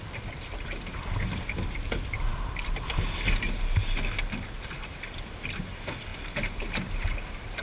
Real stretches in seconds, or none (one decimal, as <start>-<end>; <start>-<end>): 0.0-7.6